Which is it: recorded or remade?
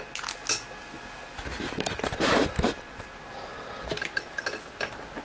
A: recorded